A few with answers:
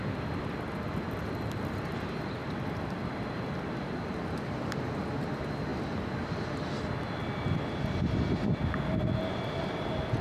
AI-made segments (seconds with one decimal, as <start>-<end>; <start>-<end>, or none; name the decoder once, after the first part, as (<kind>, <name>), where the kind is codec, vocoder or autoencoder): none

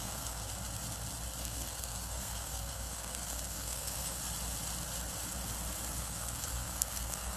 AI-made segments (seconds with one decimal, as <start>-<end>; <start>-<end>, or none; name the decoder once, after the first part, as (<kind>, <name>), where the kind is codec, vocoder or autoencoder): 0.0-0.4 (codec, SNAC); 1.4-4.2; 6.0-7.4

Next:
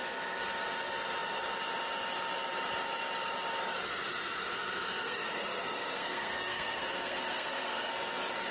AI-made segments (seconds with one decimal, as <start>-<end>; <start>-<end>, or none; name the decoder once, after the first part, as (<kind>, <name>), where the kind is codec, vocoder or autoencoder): 5.0-7.9 (codec, SNAC)